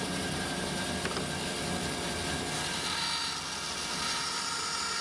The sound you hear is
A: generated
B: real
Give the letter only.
B